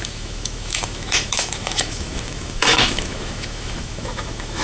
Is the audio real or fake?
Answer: fake